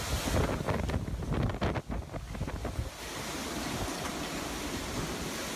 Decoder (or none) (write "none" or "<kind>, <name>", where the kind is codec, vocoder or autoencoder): none